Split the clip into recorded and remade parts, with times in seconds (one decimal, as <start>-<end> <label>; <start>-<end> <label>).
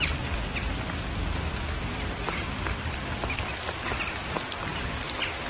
0.0-5.5 recorded